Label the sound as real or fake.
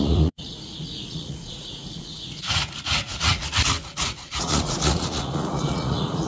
fake